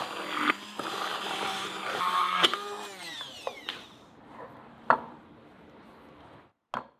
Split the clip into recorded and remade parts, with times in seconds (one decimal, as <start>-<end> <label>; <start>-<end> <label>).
0.0-1.1 recorded; 1.1-5.3 remade; 5.3-7.0 recorded